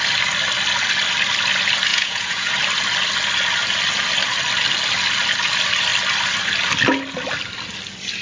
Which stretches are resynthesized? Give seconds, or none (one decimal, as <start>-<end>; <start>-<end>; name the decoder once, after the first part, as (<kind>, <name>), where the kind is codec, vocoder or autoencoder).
1.9-2.5 (vocoder, Vocos)

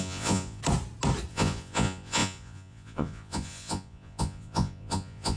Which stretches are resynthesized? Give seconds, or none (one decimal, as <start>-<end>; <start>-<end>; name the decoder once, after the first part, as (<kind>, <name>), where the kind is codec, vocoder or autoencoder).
0.0-0.6 (vocoder, Vocos); 1.3-5.4